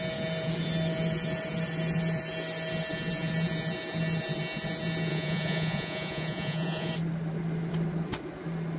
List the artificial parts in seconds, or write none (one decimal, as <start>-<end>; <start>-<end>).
5.1-6.9